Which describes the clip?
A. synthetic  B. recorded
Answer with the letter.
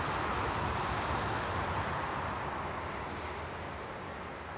B